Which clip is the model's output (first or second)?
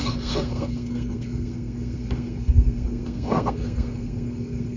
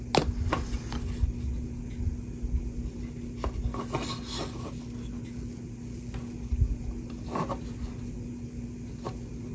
first